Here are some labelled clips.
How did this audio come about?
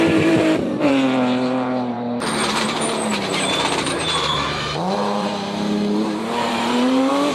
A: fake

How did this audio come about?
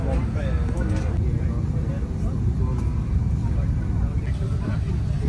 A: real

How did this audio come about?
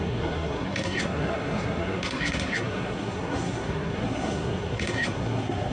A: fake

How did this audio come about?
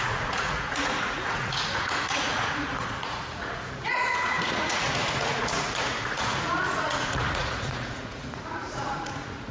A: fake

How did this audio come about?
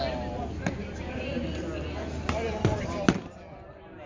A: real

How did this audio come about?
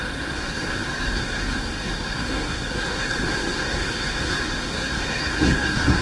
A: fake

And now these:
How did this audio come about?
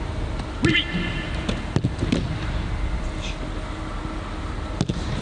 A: real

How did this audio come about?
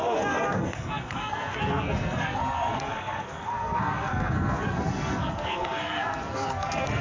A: fake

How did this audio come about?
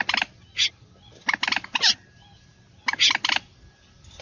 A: real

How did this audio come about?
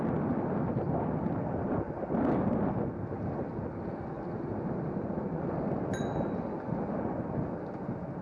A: real